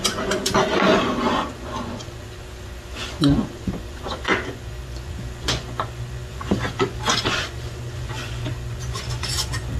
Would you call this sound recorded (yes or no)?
no